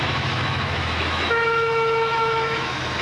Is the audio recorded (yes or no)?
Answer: no